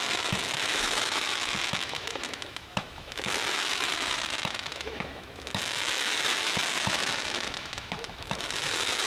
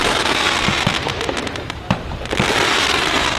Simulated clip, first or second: first